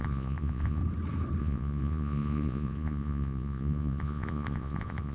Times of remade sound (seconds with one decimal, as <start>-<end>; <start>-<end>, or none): 0.0-0.8; 1.4-5.1